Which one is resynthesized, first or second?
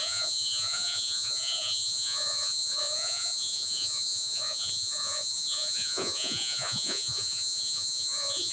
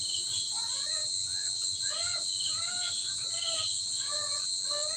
first